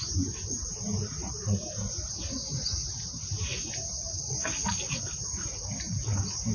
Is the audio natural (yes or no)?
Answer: yes